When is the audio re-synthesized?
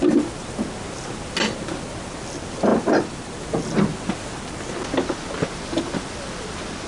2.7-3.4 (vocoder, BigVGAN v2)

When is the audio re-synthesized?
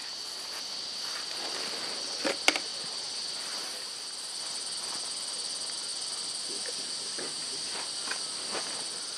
2.7-4.5 (vocoder, BigVGAN v2); 5.9-6.4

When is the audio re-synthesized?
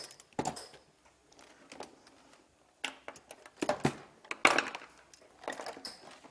none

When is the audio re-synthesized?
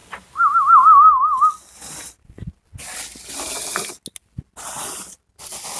none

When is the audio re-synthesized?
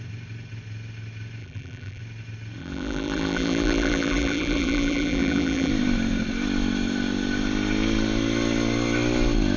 1.4-2.0 (vocoder, BigVGAN v2); 2.6-5.7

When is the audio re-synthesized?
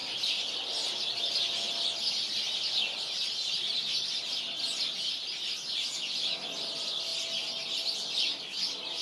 none